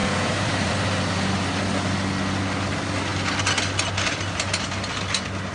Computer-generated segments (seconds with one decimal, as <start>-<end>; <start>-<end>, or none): 0.0-0.7

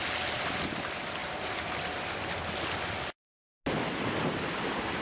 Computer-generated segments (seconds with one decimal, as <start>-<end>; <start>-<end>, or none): none

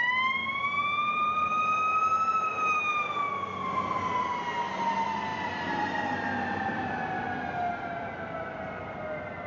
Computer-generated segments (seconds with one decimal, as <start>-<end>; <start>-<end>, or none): 0.4-1.5; 5.3-9.5

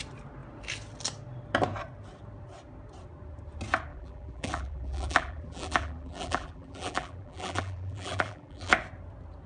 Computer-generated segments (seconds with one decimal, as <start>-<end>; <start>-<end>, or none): 3.9-8.7

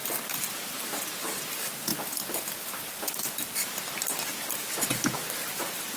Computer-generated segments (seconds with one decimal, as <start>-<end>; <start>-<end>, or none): none

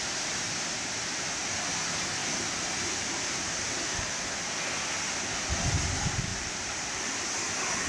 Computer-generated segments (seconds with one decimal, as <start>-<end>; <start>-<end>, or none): 2.2-4.2; 6.3-7.1

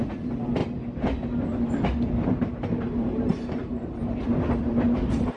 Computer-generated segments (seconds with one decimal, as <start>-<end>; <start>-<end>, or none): 0.0-0.6; 3.7-5.4

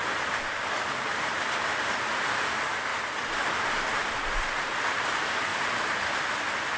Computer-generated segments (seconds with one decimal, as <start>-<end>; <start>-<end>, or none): 1.3-1.8; 5.5-6.2